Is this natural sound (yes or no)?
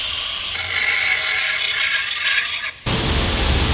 yes